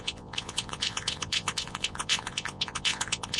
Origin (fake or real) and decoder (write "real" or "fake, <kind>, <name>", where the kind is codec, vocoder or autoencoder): fake, vocoder, Vocos